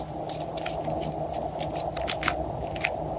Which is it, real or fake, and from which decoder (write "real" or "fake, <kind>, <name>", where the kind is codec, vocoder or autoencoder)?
real